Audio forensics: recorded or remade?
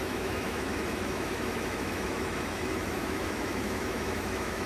remade